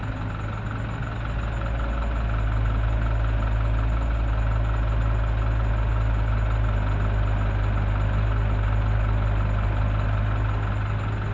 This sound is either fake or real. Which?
real